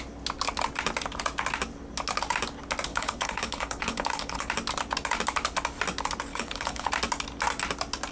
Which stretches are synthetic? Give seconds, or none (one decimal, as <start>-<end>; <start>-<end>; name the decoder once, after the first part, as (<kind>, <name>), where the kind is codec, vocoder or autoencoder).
2.9-4.5 (codec, HILCodec); 6.3-6.9